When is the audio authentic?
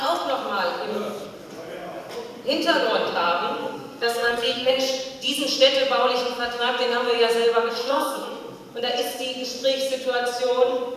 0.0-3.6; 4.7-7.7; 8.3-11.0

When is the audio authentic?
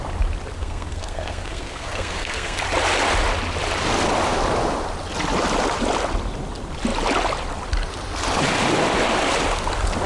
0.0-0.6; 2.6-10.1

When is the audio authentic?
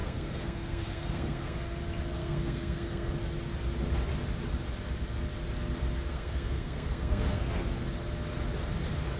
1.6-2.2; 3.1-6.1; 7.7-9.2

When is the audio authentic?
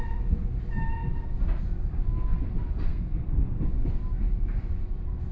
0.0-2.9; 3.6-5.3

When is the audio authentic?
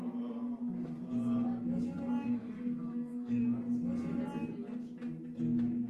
0.0-2.3; 3.4-5.9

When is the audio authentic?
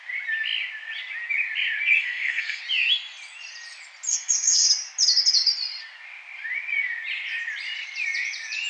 0.0-2.0; 2.6-4.1; 4.7-8.7